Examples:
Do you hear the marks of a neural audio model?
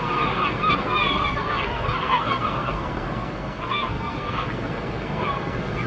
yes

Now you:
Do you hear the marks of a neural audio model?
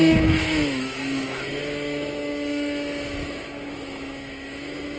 yes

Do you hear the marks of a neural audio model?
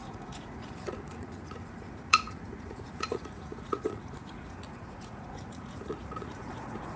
yes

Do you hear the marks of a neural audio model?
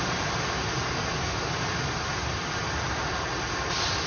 no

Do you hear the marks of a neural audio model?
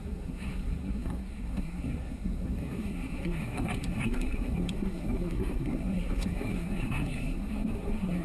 yes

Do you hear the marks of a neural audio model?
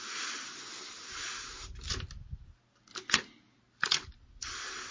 no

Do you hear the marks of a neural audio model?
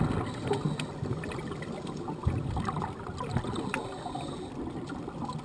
no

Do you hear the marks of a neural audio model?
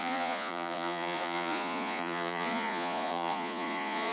yes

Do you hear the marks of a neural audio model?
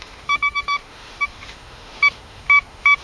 yes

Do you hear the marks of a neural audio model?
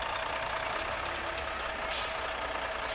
no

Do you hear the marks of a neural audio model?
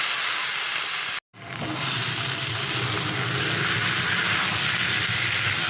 no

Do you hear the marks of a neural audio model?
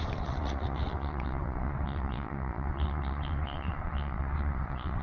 yes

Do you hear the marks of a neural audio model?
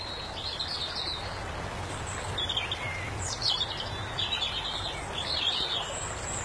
no